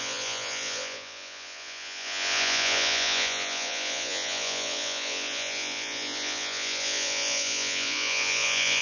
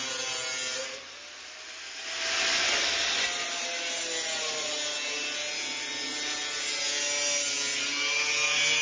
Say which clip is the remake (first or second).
first